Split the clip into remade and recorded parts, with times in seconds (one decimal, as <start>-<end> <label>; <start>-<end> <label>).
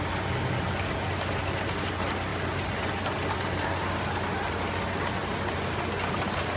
0.0-6.6 recorded